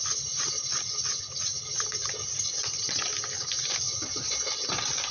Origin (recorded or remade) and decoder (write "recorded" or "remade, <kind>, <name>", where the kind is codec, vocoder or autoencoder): recorded